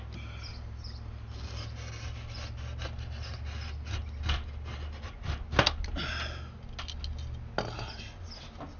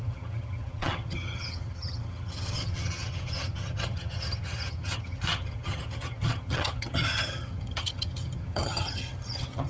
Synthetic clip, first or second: second